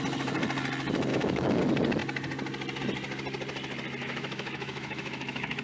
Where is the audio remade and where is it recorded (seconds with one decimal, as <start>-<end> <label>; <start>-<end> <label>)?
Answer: 0.0-1.1 recorded; 1.1-1.6 remade; 1.6-4.0 recorded; 4.0-5.6 remade